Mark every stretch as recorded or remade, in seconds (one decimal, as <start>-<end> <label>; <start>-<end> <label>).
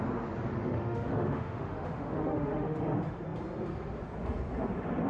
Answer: 0.0-0.5 recorded; 0.5-2.8 remade; 2.8-5.1 recorded